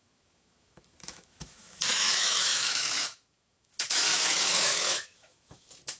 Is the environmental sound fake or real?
fake